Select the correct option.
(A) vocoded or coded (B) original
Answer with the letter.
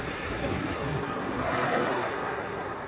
A